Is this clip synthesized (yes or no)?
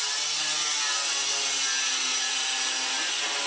no